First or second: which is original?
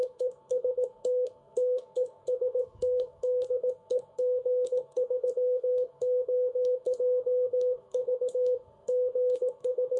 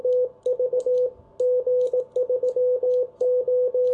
second